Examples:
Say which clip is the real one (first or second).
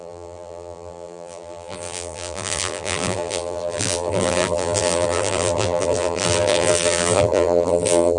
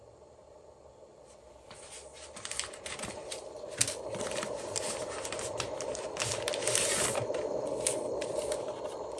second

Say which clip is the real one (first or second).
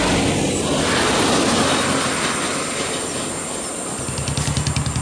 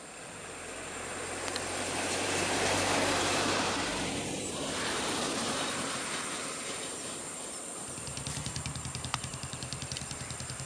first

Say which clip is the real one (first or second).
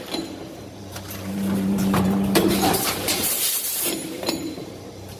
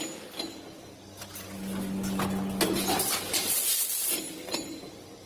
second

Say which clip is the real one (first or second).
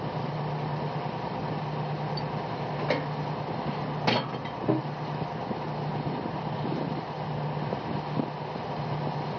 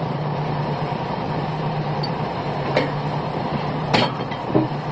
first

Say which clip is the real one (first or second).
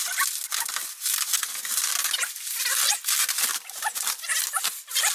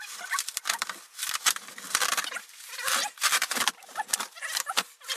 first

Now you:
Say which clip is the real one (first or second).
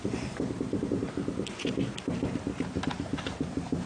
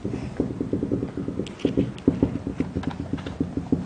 second